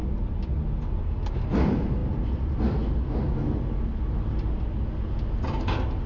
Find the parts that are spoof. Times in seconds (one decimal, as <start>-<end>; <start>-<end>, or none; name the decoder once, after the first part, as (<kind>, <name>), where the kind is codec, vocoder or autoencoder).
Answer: none